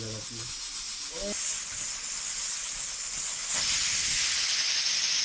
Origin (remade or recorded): recorded